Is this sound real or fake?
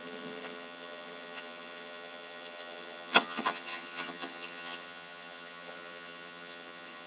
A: fake